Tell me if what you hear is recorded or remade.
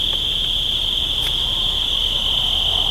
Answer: recorded